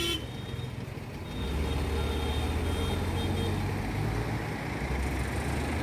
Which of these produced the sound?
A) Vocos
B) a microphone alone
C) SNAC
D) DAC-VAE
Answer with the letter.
B